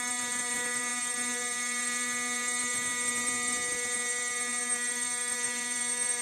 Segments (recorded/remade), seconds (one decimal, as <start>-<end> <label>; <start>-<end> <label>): 0.0-6.2 remade